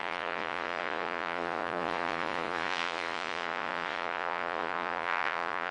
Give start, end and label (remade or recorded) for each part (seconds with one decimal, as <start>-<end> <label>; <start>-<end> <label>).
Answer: 0.0-5.7 remade

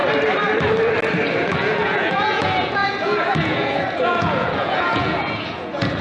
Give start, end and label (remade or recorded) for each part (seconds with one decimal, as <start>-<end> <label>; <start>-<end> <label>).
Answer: 0.0-1.4 recorded; 1.4-6.0 remade

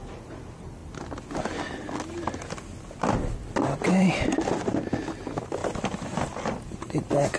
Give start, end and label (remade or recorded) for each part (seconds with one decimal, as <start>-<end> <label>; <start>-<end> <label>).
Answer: 0.0-7.4 recorded